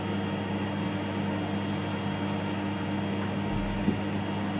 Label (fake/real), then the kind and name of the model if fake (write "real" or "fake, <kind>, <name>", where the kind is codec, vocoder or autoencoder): real